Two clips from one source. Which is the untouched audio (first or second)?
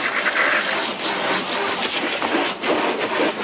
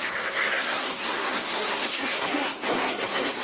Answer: first